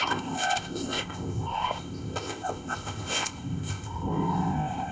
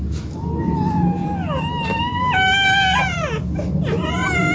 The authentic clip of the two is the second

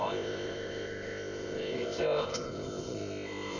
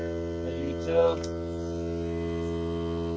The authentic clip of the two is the second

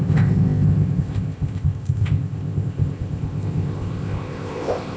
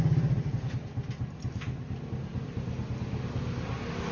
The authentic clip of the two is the second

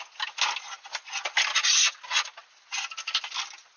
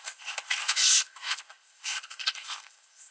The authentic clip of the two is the first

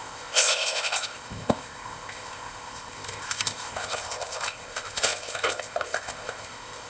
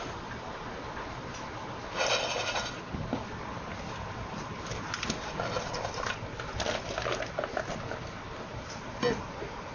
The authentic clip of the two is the second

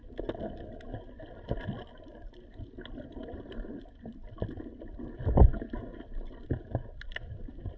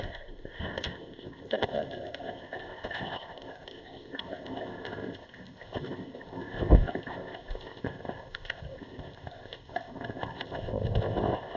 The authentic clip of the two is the first